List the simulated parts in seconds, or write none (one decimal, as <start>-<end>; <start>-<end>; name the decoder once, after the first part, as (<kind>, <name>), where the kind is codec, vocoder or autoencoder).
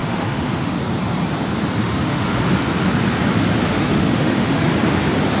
0.0-0.8 (autoencoder, DAC-VAE); 1.8-2.4; 3.7-4.7